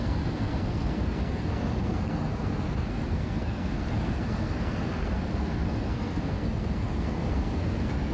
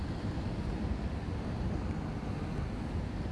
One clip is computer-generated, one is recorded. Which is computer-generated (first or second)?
first